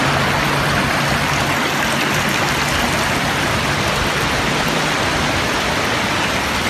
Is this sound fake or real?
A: real